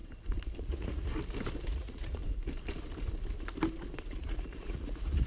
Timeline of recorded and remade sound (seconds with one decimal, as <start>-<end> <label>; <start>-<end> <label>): 0.0-0.7 recorded; 0.7-1.1 remade; 1.1-1.7 recorded; 1.7-2.2 remade; 2.2-4.0 recorded; 4.0-5.3 remade